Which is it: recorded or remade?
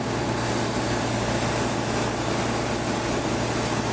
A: recorded